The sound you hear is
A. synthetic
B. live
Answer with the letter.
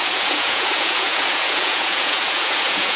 A